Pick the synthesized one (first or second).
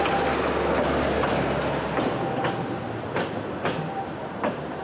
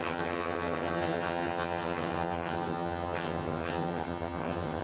second